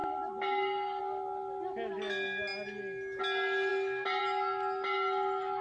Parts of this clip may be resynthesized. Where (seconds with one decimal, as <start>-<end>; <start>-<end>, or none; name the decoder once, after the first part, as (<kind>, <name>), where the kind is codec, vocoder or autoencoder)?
none